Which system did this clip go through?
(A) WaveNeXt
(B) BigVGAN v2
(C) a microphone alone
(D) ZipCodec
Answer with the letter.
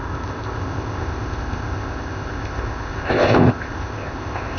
D